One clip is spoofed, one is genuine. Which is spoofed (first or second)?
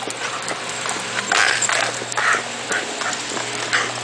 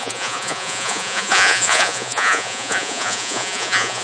second